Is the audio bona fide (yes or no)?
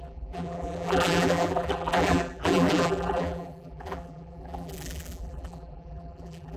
no